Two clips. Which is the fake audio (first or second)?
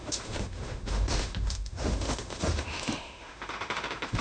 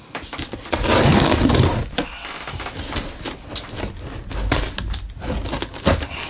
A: first